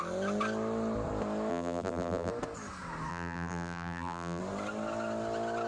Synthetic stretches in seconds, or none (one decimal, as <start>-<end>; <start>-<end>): 1.5-2.3; 3.1-4.4

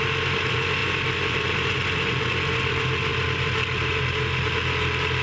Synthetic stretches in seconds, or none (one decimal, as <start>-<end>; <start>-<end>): 0.8-2.1

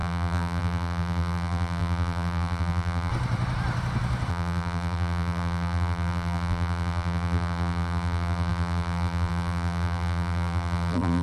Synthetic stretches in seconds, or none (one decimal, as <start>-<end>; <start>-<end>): 0.0-3.1; 4.3-11.2

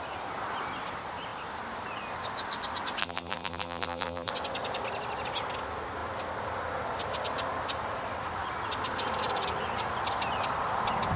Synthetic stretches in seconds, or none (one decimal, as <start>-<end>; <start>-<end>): 3.0-4.3

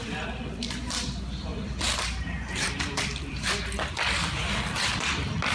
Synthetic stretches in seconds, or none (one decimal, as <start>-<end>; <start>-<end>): 1.5-4.8

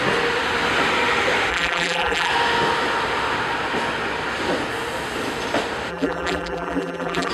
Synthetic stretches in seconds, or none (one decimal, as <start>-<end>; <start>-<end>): 1.5-2.3; 5.9-7.3

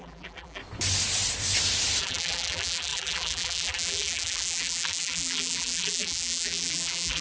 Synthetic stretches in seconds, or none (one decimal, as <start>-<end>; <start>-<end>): 0.0-0.6; 2.0-7.2